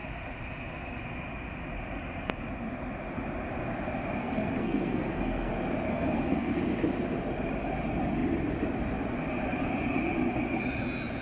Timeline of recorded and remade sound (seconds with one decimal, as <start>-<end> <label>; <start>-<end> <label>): 0.0-4.2 recorded; 4.2-5.5 remade; 5.5-5.9 recorded; 5.9-6.6 remade; 6.6-11.2 recorded